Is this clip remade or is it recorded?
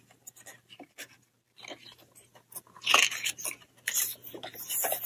recorded